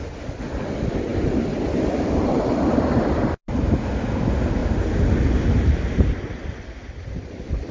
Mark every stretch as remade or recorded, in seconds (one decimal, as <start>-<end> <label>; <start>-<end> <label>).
0.0-7.7 recorded